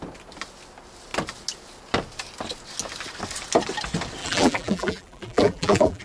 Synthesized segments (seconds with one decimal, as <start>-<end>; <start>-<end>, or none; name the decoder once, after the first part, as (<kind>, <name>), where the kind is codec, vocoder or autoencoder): 4.2-6.0 (vocoder, BigVGAN v2)